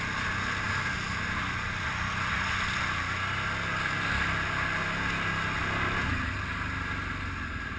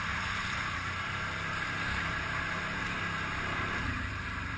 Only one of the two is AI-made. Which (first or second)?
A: second